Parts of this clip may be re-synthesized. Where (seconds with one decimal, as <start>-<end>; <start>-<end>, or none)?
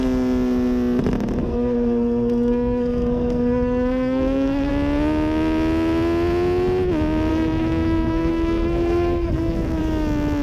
1.4-4.7; 7.3-9.8